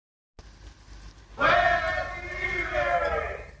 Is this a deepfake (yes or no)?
no